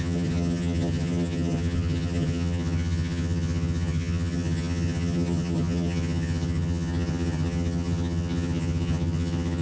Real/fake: fake